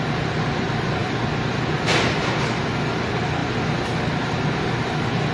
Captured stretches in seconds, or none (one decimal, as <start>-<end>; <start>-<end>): 0.0-5.3